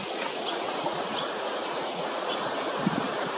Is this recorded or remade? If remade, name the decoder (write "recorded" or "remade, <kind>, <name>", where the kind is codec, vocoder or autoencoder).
remade, vocoder, Vocos